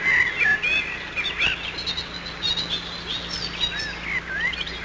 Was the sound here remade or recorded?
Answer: recorded